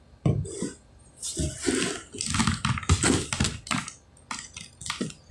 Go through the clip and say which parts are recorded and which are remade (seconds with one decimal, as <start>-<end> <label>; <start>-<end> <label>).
0.0-5.3 recorded